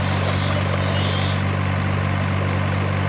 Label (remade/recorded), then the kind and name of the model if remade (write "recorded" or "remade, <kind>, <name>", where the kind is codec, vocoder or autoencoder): recorded